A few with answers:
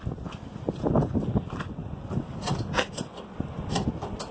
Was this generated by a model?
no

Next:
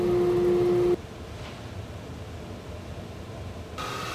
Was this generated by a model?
no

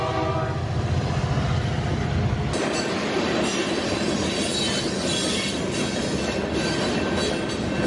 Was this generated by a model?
no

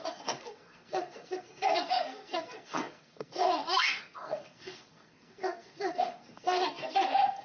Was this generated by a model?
yes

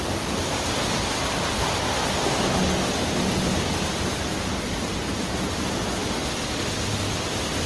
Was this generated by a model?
no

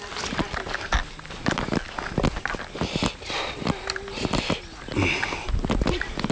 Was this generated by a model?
no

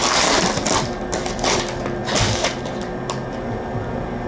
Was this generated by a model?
no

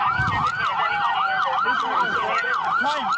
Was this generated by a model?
no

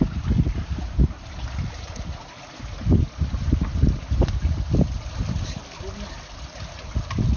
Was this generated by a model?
no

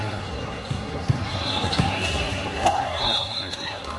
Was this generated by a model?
yes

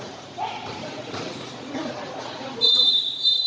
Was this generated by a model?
yes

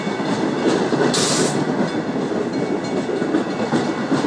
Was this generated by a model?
no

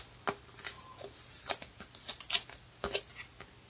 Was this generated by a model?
no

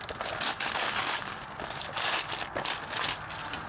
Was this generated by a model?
no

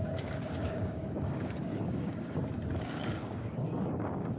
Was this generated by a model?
yes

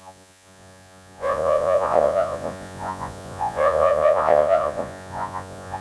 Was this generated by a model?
yes